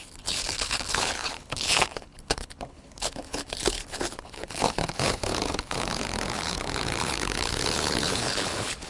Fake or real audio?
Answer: fake